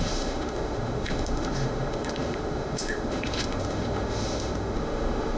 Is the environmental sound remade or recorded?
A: remade